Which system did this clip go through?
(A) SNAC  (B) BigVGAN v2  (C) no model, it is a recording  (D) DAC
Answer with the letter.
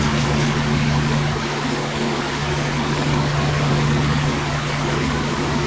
D